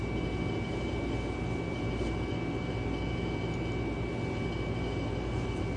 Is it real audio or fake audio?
real